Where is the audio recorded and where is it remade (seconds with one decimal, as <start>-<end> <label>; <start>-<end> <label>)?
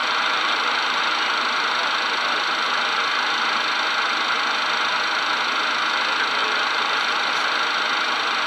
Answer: 0.0-1.0 remade; 1.0-6.4 recorded; 6.4-7.3 remade; 7.3-8.5 recorded